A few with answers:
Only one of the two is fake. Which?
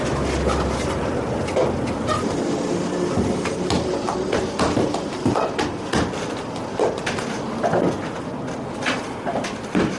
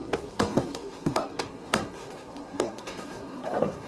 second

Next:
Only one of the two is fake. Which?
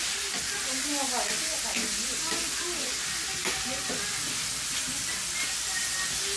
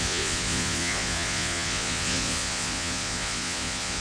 second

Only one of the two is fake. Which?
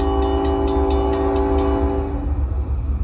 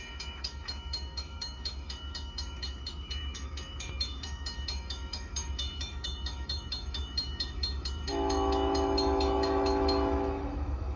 second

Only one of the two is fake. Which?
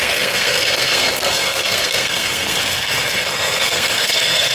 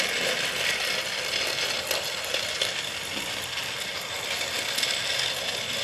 first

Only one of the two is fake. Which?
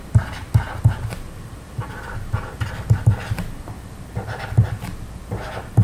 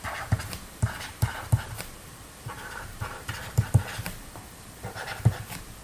second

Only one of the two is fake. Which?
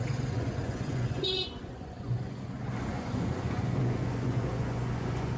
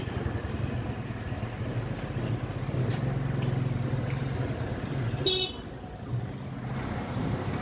first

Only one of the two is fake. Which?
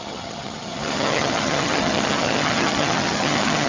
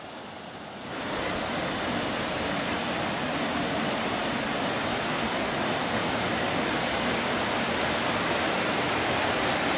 first